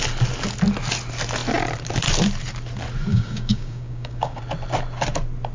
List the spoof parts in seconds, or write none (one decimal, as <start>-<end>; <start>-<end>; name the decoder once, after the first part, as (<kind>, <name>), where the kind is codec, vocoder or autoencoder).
3.1-4.4 (codec, DAC)